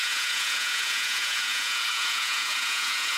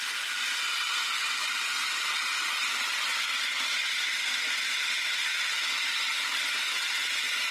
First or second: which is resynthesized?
first